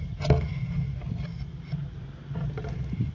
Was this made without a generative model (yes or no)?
yes